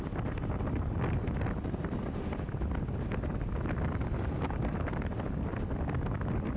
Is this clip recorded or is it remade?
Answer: recorded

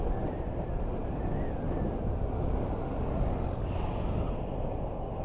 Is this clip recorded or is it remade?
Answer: recorded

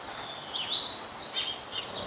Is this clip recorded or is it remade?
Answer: recorded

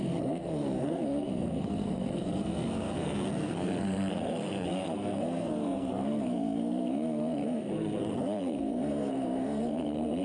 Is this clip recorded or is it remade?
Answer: remade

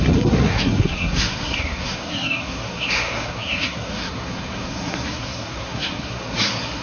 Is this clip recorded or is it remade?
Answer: remade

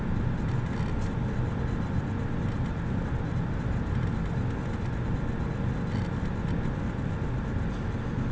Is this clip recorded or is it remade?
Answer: recorded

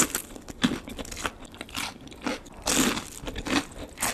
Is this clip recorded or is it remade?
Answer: recorded